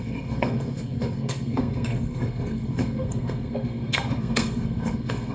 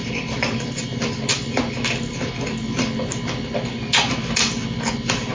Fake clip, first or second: first